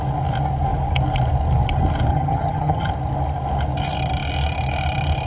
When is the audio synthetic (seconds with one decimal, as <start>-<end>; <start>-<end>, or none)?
2.1-2.9

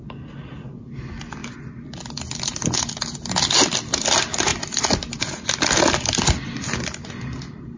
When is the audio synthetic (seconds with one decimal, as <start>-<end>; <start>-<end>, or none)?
none

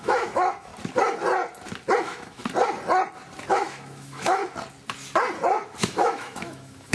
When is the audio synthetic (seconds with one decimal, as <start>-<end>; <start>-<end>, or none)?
0.0-0.7; 2.0-2.4; 3.5-4.4; 5.8-6.9

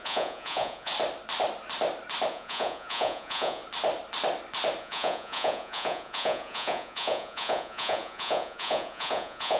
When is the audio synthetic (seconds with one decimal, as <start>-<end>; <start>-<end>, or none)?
0.0-0.9; 2.3-3.6; 4.8-9.6